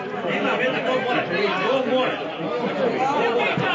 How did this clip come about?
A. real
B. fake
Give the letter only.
A